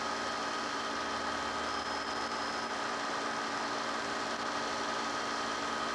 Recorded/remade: recorded